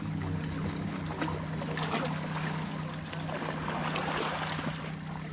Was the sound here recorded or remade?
recorded